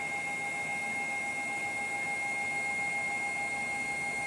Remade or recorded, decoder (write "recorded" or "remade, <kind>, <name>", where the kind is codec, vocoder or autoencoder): recorded